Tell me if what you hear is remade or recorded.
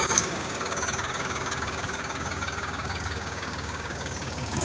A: remade